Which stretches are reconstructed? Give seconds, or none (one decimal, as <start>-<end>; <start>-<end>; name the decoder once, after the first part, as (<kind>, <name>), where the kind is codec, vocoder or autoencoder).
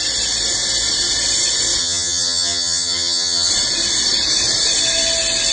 1.8-3.5 (vocoder, HiFi-GAN)